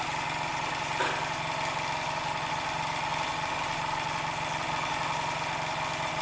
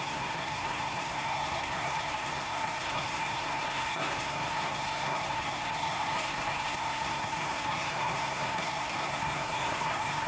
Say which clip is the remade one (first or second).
second